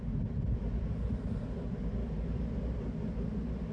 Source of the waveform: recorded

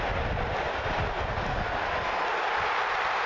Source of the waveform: recorded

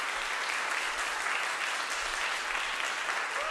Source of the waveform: recorded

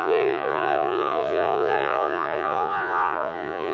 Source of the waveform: remade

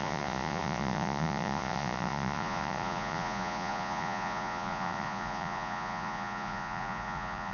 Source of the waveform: remade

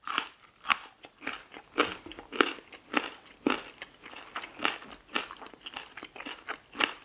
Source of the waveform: recorded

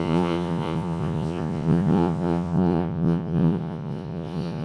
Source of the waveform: remade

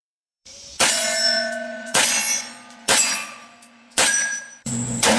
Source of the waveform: remade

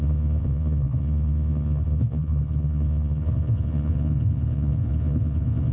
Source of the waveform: remade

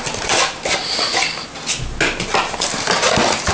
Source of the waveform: recorded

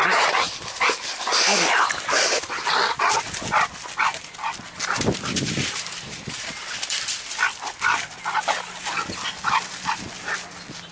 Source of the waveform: recorded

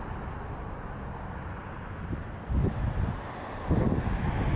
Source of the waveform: recorded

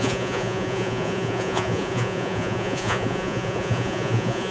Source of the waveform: remade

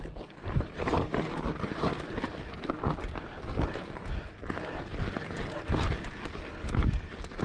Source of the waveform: recorded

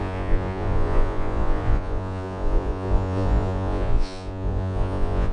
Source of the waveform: remade